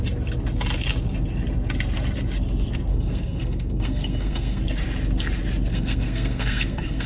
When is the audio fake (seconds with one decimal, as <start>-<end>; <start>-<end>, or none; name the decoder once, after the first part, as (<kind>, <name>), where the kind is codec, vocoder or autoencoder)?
2.9-4.6 (codec, SNAC); 5.7-7.1

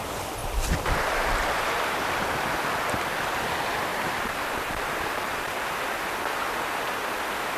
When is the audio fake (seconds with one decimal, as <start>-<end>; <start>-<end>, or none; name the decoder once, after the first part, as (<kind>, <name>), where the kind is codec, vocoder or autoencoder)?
0.4-2.1 (vocoder, BigVGAN v2); 3.9-5.5

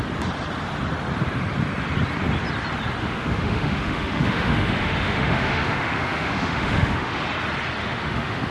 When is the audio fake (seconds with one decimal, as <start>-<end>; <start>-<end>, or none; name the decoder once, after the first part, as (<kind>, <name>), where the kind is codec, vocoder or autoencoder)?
3.0-7.2 (autoencoder, DAC-VAE); 7.8-8.5

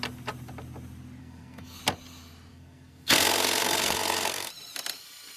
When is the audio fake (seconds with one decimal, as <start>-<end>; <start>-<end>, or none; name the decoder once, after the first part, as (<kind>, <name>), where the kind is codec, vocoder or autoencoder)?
1.2-1.8 (codec, SNAC); 2.5-4.5

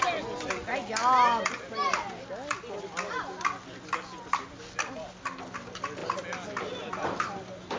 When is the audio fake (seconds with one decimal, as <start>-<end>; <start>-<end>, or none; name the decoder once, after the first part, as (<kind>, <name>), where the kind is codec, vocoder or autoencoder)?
none

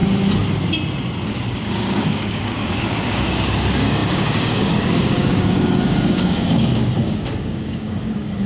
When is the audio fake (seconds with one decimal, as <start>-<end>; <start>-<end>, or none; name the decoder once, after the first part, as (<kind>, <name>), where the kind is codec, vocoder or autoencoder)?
1.3-8.5 (codec, DAC)